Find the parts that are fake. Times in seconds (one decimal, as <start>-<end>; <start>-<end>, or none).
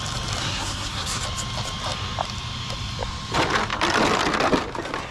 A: 0.4-1.2